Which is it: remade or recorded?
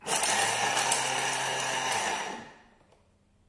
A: recorded